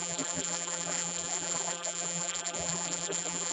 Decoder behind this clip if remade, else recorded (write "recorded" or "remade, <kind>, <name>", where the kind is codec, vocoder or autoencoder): remade, vocoder, BigVGAN v2